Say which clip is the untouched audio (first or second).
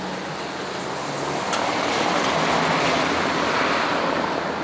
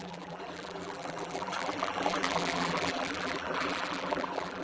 first